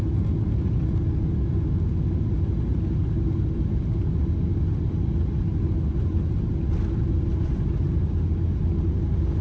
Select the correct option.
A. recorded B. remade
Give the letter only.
A